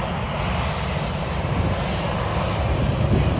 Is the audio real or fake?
real